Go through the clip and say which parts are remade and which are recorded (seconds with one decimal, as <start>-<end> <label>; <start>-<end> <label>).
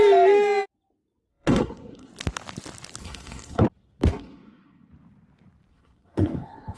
0.0-1.3 recorded; 1.3-2.1 remade; 2.1-3.0 recorded; 3.0-3.6 remade; 3.6-4.1 recorded; 4.1-4.9 remade; 4.9-5.7 recorded; 5.7-6.8 remade